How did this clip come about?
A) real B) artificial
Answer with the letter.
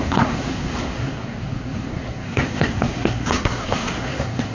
B